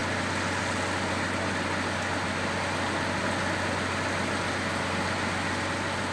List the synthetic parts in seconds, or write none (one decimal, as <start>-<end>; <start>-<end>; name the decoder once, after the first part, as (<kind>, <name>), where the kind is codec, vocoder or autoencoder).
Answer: none